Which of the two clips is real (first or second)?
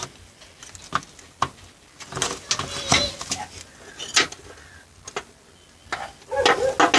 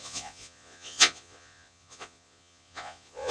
first